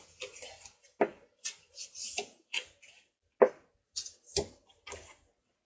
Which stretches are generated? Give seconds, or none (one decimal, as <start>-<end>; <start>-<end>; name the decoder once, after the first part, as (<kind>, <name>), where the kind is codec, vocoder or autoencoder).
none

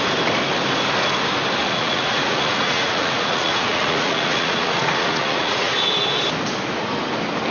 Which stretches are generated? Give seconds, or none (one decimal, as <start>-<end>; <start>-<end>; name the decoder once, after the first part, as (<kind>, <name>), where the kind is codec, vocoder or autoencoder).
1.6-5.7 (vocoder, Vocos)

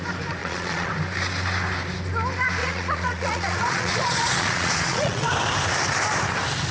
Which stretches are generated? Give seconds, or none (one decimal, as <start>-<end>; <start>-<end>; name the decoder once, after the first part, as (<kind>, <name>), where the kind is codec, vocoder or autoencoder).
0.4-0.9 (vocoder, Vocos); 2.6-5.3